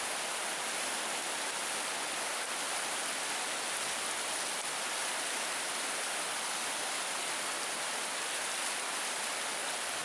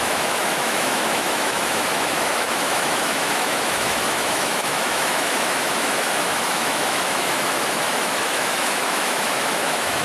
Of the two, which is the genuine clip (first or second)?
first